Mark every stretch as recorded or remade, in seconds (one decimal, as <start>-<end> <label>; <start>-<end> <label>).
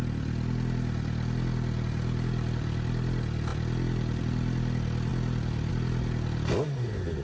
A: 0.0-7.2 recorded